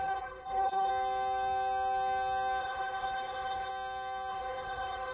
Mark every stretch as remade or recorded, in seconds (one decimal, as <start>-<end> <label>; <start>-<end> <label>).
0.0-0.9 remade; 0.9-2.6 recorded; 2.6-3.7 remade; 3.7-4.3 recorded; 4.3-5.1 remade